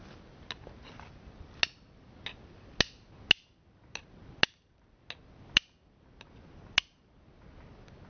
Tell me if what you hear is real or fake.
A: real